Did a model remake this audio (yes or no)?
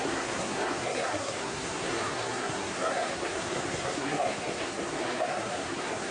yes